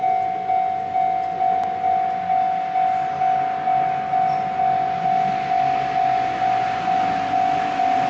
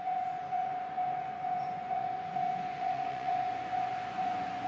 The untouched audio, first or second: first